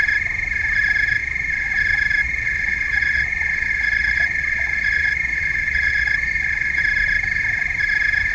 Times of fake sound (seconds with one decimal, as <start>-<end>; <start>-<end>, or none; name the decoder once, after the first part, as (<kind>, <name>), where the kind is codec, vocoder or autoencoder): 1.2-1.7 (vocoder, Vocos); 2.2-6.8